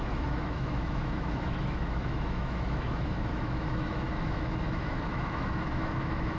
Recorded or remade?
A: remade